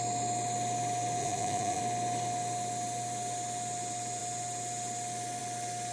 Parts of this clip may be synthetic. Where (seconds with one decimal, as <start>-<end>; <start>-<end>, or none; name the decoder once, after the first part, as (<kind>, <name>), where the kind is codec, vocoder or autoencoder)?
1.2-1.8 (vocoder, Vocos)